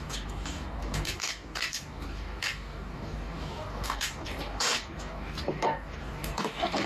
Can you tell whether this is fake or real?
fake